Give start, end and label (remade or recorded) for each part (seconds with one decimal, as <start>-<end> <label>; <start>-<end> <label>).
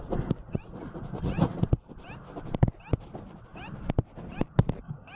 0.0-0.4 recorded; 0.4-1.7 remade; 1.7-5.2 recorded